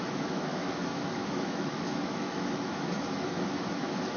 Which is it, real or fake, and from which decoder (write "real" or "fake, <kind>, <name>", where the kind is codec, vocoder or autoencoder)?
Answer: fake, autoencoder, DAC-VAE